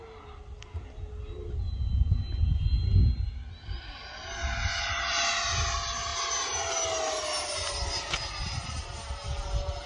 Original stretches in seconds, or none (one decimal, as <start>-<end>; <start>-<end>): 0.0-9.9